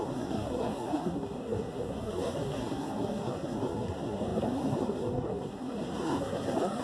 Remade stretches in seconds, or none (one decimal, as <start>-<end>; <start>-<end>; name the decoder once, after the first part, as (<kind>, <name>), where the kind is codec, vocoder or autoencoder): 0.0-6.8 (codec, SNAC)